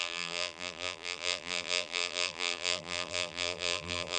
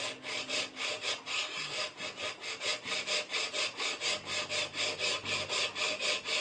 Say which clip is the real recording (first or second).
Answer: second